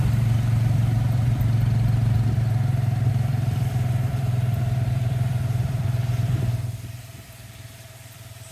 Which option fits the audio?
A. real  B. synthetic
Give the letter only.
B